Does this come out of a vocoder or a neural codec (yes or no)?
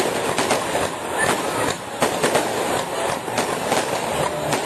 no